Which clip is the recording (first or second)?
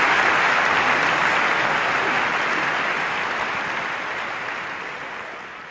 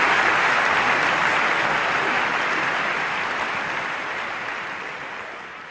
first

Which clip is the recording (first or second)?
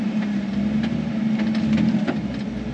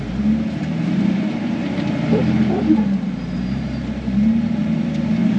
first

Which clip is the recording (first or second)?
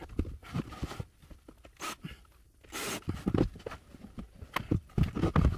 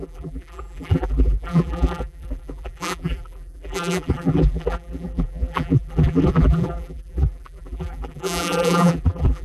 first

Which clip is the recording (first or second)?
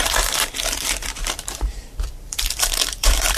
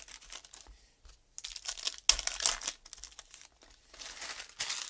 second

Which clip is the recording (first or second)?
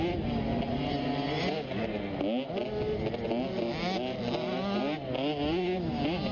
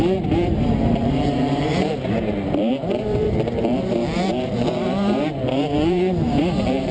first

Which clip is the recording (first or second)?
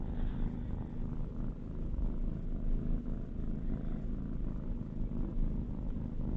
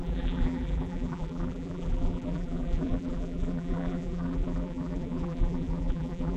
first